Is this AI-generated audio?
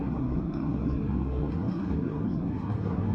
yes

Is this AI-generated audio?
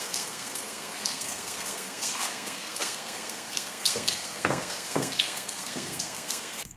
yes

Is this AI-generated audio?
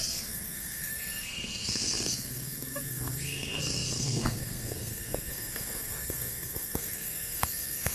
yes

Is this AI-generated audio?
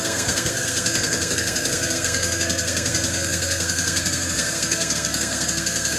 yes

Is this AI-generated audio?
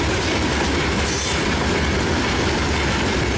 no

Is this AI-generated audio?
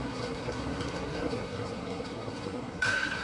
yes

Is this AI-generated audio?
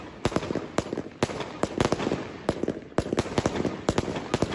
no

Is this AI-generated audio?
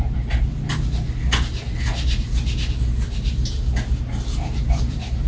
no